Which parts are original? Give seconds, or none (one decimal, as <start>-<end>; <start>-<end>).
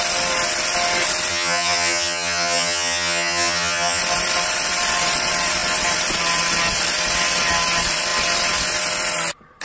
0.0-1.3; 4.0-9.6